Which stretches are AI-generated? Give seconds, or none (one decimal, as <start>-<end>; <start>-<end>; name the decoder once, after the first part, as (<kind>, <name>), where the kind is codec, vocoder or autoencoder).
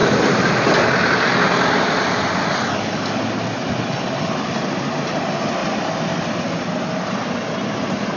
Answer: none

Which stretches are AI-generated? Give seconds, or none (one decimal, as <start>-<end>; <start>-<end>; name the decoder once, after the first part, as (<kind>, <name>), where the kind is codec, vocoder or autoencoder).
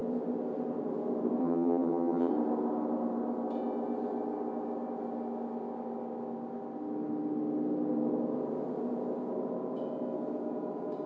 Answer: 1.4-2.3 (vocoder, HiFi-GAN)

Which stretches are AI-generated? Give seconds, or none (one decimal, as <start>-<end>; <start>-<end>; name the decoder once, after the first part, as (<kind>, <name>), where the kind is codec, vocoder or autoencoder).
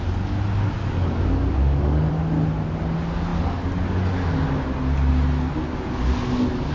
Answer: 0.8-2.1 (codec, DAC)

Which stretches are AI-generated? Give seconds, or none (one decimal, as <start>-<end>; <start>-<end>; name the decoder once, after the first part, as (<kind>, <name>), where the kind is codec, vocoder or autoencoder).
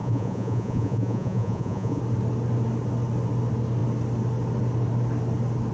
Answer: 0.0-2.0 (vocoder, Vocos)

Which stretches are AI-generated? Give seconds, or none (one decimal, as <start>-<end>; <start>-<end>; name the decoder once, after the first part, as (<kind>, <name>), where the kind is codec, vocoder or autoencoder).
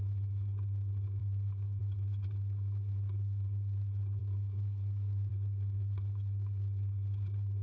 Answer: 1.2-1.8 (codec, DAC); 4.2-5.3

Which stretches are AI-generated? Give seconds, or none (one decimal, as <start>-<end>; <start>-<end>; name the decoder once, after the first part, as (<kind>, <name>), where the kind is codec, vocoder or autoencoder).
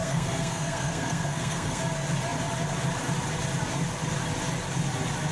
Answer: 0.0-1.8 (codec, SNAC)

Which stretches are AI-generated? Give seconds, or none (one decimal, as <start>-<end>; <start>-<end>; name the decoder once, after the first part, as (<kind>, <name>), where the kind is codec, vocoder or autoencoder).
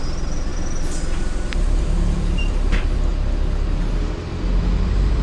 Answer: 0.0-3.1 (vocoder, BigVGAN v2); 4.6-5.2